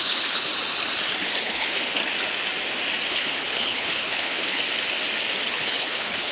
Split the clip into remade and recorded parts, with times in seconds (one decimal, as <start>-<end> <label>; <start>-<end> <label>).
0.0-0.5 remade; 0.5-1.4 recorded; 1.4-2.0 remade; 2.0-3.1 recorded; 3.1-4.6 remade; 4.6-5.5 recorded; 5.5-6.3 remade